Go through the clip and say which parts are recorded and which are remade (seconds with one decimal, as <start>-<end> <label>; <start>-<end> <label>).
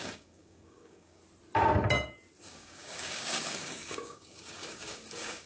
0.0-1.2 remade; 1.2-2.4 recorded; 2.4-5.5 remade